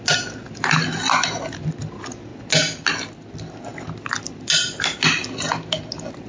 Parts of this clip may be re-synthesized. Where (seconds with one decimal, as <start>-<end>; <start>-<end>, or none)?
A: none